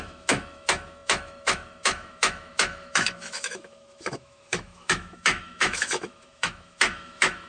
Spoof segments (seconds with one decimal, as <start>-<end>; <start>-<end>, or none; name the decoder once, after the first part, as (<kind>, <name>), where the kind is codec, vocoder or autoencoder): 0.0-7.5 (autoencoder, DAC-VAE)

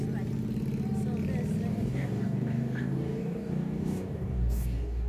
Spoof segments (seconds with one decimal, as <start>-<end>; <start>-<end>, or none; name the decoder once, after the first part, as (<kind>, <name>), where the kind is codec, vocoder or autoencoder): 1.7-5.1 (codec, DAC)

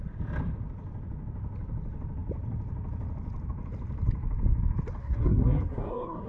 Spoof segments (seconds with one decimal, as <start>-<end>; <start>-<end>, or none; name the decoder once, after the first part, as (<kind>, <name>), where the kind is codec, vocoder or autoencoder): 5.0-6.3 (codec, SNAC)

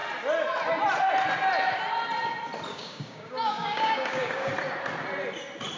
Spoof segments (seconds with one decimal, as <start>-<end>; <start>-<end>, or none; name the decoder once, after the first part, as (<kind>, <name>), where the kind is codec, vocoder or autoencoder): 2.7-4.5 (codec, DAC)

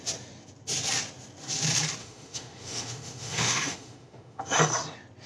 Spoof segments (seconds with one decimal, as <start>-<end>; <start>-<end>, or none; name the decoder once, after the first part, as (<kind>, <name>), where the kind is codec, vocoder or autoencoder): 2.0-4.4 (autoencoder, DAC-VAE)

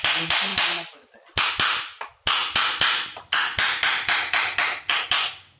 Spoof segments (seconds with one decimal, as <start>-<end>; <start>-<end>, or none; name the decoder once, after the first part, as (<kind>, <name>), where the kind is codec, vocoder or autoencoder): none